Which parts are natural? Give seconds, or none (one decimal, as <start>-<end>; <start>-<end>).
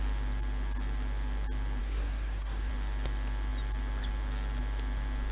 0.0-1.8; 2.7-5.3